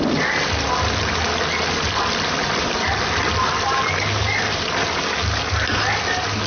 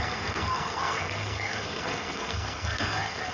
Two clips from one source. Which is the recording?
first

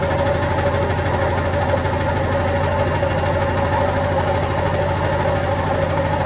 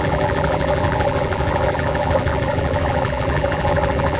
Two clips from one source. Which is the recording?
first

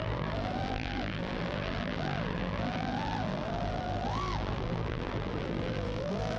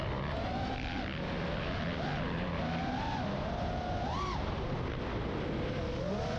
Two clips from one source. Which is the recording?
second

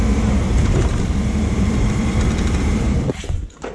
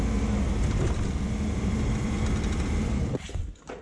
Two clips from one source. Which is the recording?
second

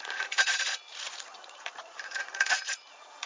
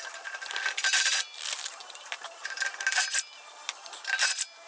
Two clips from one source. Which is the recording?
second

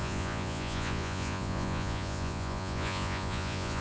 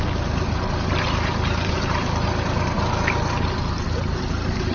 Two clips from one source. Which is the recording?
second